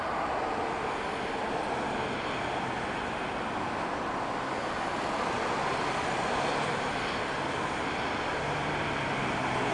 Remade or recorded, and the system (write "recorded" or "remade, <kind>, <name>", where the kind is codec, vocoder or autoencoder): recorded